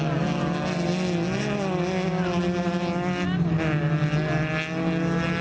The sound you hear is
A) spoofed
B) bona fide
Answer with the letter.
B